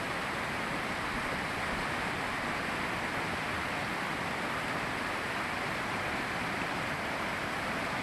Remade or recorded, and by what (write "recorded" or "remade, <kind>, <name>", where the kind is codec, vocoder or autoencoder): recorded